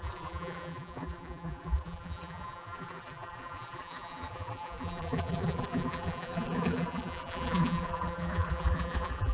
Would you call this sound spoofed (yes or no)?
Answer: yes